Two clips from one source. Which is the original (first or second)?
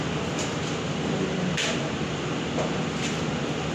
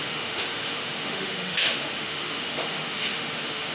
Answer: first